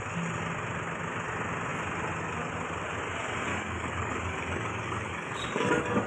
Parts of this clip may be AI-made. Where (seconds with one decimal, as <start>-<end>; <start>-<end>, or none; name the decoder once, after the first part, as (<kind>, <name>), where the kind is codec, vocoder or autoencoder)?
3.5-6.1 (codec, DAC)